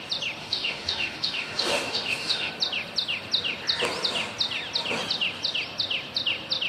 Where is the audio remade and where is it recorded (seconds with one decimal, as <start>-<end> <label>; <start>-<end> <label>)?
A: 0.0-0.4 recorded; 0.4-2.5 remade; 2.5-6.7 recorded